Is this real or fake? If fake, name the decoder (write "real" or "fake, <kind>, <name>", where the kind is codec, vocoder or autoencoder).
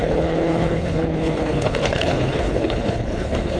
fake, codec, HILCodec